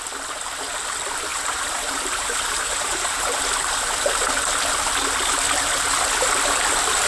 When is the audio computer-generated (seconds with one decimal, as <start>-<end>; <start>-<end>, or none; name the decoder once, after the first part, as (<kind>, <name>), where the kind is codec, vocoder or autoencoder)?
1.3-3.4 (vocoder, BigVGAN v2)